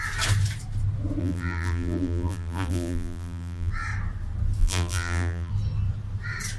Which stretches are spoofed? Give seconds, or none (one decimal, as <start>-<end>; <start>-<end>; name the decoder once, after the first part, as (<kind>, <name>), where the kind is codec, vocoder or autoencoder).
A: 1.2-3.7 (vocoder, BigVGAN v2); 4.6-5.5